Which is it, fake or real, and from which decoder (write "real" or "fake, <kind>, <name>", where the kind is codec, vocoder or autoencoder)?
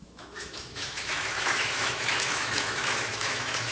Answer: fake, autoencoder, DAC-VAE